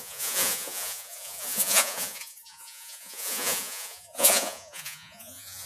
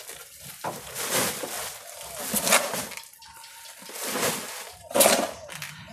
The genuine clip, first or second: second